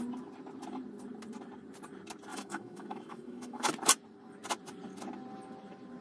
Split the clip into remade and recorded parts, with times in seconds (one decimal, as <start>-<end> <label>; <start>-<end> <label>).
0.0-2.3 recorded; 2.3-3.7 remade; 3.7-6.0 recorded